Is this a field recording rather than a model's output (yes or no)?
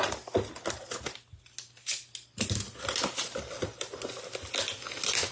yes